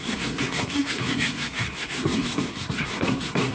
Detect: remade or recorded remade